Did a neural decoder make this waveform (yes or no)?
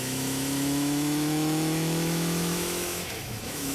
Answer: yes